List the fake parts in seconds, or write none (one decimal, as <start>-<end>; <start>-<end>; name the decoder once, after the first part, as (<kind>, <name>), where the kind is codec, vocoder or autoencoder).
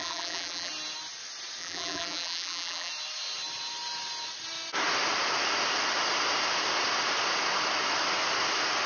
0.0-0.7 (vocoder, BigVGAN v2); 1.6-2.9